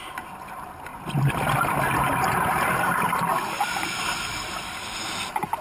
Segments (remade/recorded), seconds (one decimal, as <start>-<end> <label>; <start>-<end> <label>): 0.0-5.6 recorded